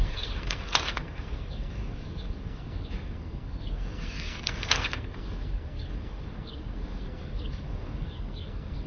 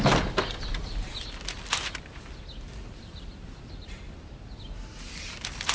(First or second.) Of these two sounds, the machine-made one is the first